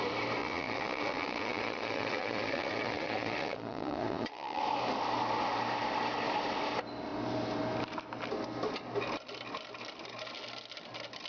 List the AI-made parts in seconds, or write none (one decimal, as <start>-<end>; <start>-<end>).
0.4-4.6